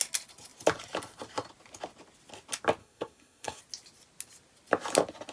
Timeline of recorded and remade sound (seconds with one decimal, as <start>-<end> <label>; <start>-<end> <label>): 0.0-2.8 recorded; 2.8-3.6 remade; 3.6-5.3 recorded